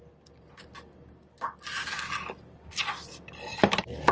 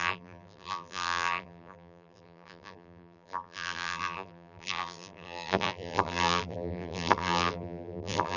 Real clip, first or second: first